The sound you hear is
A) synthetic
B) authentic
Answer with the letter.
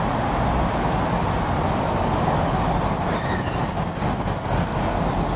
B